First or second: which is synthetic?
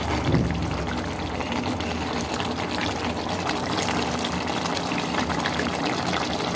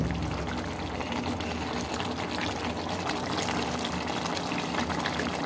first